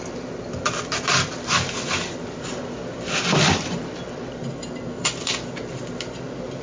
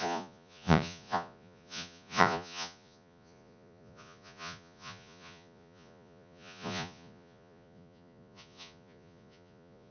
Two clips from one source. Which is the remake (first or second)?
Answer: second